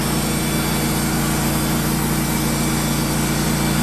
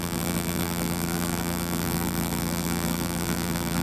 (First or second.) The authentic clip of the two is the first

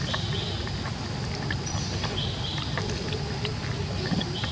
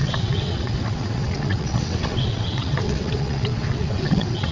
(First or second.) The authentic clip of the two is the first